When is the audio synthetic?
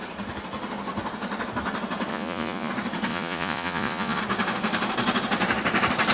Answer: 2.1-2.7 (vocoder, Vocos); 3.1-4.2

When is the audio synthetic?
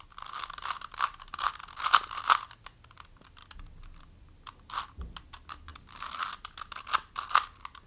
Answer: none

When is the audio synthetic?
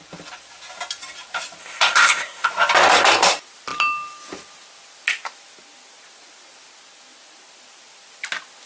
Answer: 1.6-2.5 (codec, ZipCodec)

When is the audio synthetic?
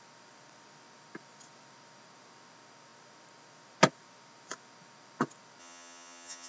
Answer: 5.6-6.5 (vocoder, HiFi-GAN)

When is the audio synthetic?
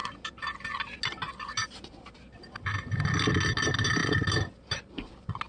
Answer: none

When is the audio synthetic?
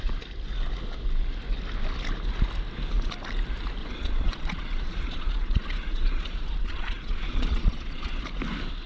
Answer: 3.8-8.2 (vocoder, Vocos)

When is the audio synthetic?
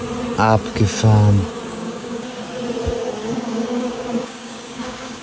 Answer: 1.7-2.4 (codec, DAC); 3.2-5.2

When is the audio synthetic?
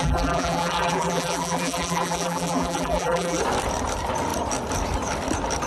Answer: 0.0-3.4 (vocoder, BigVGAN v2)